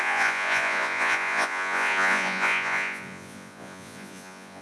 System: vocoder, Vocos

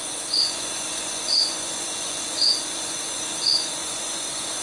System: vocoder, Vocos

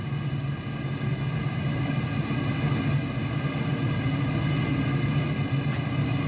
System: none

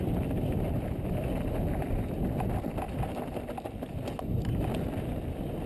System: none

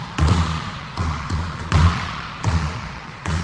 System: vocoder, Vocos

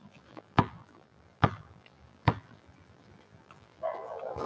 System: vocoder, BigVGAN v2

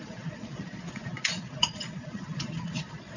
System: vocoder, Vocos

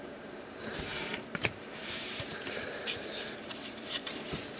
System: vocoder, BigVGAN v2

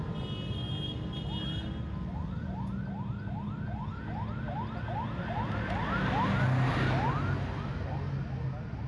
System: none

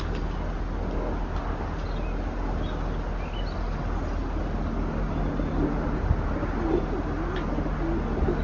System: none